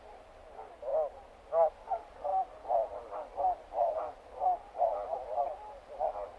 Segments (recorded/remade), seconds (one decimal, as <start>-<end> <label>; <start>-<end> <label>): 0.0-6.4 recorded